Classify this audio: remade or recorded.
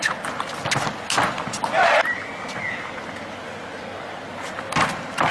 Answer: recorded